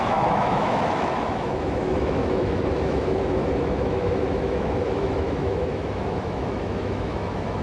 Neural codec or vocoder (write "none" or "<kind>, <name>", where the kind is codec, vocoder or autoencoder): autoencoder, DAC-VAE